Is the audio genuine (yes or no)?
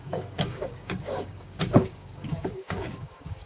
no